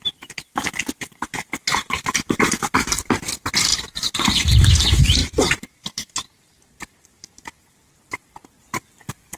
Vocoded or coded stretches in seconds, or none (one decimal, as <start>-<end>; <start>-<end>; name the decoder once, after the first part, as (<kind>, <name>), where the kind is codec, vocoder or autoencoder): 1.7-2.5 (vocoder, BigVGAN v2); 3.7-4.7; 5.2-8.6